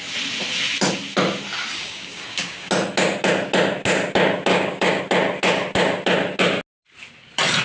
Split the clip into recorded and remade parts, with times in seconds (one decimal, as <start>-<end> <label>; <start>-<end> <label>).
0.0-1.7 recorded; 1.7-2.7 remade; 2.7-4.5 recorded; 4.5-5.0 remade; 5.0-7.6 recorded